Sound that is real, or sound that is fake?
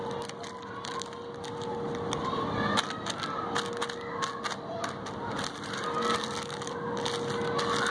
real